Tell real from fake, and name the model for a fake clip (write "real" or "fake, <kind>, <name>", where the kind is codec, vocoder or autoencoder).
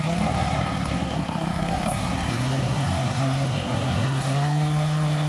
fake, codec, SNAC